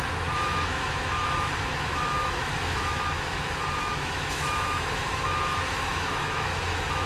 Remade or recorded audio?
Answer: remade